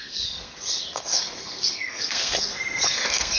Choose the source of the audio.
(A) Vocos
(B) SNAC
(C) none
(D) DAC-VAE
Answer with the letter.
B